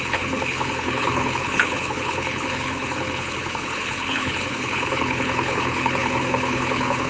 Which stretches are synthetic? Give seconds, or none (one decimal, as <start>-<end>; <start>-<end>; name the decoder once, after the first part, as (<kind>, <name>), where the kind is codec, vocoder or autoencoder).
0.0-7.1 (codec, HILCodec)